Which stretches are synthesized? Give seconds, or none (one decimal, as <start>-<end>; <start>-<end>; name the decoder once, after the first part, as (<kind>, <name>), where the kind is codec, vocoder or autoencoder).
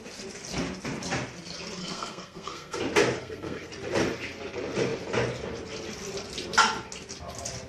1.8-2.8 (codec, SNAC); 3.2-3.7